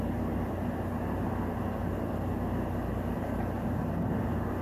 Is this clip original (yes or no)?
yes